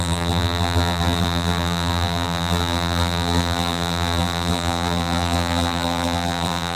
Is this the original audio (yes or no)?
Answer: no